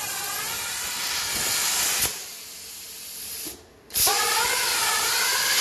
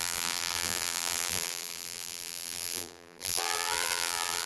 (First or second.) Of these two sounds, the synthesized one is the second